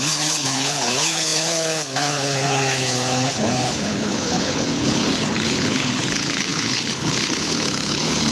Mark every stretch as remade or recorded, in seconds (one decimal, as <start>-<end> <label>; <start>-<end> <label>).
0.0-8.3 remade